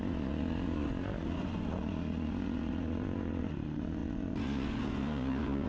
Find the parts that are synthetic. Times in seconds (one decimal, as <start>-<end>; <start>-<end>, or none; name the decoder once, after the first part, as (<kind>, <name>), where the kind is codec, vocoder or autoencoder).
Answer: 0.0-5.7 (vocoder, Vocos)

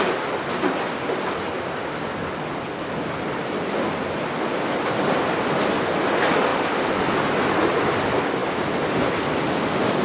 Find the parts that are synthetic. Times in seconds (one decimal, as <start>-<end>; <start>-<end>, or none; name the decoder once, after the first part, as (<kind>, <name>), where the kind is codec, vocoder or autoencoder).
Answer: none